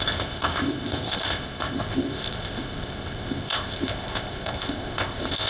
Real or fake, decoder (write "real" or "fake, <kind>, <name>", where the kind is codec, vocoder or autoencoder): fake, codec, ZipCodec